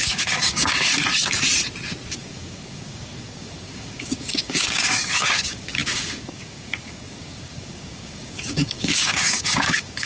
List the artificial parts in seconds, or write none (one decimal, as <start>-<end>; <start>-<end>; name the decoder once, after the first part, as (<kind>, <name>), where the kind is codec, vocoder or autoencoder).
0.0-0.9 (codec, DAC); 2.2-10.1